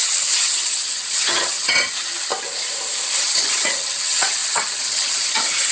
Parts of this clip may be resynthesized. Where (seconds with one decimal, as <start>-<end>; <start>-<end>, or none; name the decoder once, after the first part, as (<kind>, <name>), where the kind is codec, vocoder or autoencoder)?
0.0-2.3 (vocoder, HiFi-GAN); 3.2-5.7